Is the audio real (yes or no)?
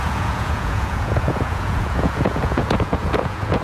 no